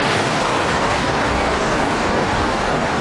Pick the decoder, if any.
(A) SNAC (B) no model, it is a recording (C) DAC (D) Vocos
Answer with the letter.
C